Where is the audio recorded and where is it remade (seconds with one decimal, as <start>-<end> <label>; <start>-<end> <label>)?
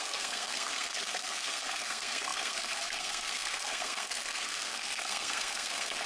0.0-6.1 remade